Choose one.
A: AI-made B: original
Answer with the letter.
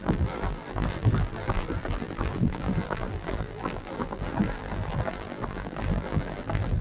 A